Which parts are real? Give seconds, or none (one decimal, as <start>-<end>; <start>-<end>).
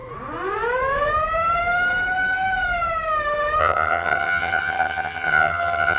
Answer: 0.0-3.6